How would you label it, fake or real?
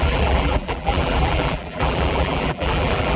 fake